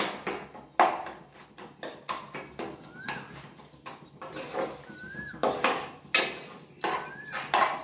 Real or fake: real